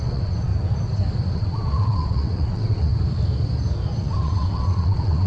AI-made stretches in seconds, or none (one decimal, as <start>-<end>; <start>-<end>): 0.0-0.5; 1.3-2.9; 4.0-5.3